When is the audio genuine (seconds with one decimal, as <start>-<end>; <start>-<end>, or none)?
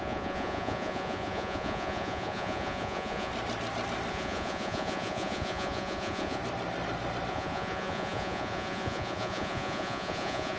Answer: 3.3-4.1; 6.4-7.3